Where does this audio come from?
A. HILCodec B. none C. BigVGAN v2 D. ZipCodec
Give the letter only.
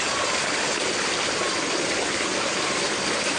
B